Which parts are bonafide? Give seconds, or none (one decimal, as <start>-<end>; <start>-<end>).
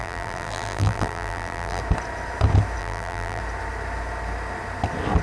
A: 1.8-2.8; 3.4-5.2